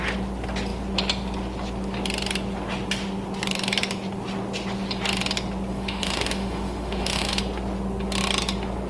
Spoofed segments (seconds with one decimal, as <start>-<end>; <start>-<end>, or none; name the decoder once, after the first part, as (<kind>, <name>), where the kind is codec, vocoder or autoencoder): 5.7-7.4 (autoencoder, DAC-VAE)